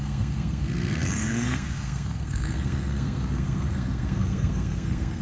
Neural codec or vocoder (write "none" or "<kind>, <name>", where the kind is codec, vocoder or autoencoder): codec, SNAC